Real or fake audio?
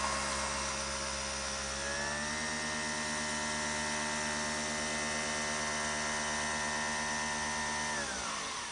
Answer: real